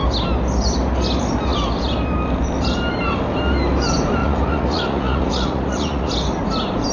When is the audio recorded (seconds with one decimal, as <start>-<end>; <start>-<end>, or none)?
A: 0.0-4.2; 6.1-6.9